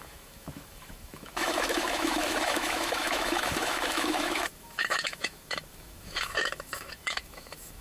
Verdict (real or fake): fake